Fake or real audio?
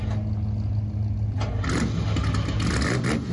real